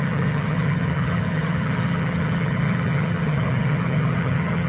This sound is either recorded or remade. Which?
remade